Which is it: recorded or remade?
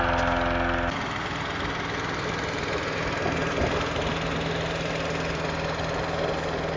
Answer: recorded